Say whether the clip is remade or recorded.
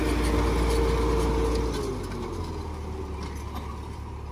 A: recorded